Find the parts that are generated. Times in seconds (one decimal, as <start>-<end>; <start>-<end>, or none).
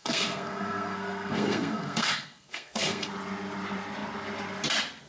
0.0-3.1